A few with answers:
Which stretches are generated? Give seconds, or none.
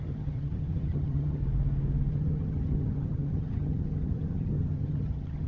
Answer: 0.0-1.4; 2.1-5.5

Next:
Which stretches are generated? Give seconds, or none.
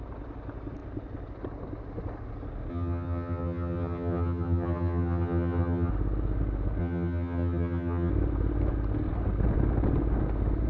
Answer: 2.7-5.9; 6.8-8.1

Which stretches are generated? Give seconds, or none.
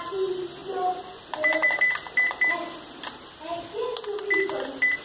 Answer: none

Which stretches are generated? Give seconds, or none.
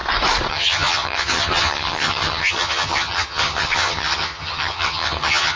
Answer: 0.5-5.6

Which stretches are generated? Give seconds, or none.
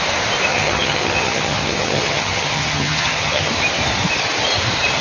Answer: 0.5-3.5